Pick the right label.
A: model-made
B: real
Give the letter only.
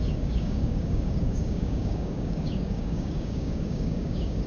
A